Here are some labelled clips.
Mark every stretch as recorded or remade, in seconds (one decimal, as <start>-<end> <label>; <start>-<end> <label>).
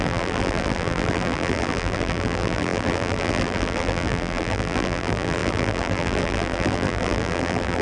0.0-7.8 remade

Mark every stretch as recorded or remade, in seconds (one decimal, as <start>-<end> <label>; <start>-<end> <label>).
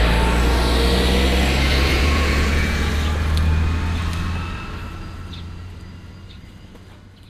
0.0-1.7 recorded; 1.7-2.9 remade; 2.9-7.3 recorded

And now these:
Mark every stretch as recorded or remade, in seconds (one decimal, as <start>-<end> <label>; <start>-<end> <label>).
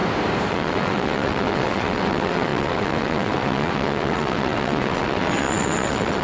0.0-0.5 recorded; 0.5-6.2 remade